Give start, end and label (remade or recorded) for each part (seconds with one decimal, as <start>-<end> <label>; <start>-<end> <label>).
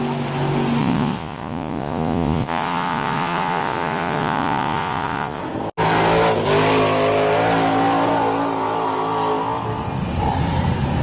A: 0.0-0.8 recorded; 0.8-5.4 remade; 5.4-11.0 recorded